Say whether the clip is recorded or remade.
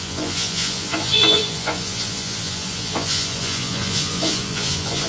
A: remade